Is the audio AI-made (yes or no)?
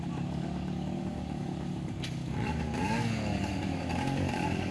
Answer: yes